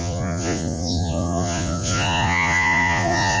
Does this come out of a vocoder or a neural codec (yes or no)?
yes